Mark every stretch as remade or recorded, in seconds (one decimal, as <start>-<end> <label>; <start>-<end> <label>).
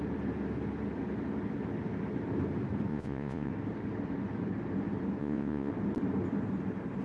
0.0-2.9 recorded; 2.9-3.5 remade; 3.5-5.2 recorded; 5.2-5.7 remade; 5.7-7.0 recorded